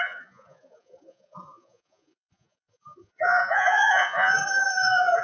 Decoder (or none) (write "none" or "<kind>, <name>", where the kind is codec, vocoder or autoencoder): vocoder, Vocos